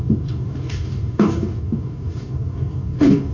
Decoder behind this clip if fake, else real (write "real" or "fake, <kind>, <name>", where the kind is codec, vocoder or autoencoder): fake, codec, DAC